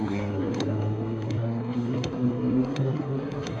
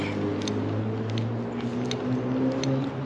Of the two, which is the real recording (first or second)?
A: second